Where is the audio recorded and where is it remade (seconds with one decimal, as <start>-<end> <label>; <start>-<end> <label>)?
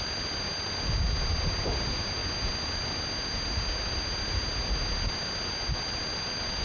0.0-6.6 recorded